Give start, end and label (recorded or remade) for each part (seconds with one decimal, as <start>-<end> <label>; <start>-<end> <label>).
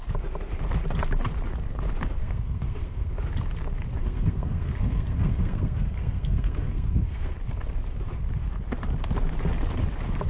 0.0-2.2 recorded; 2.2-3.1 remade; 3.1-4.0 recorded; 4.0-7.3 remade; 7.3-10.3 recorded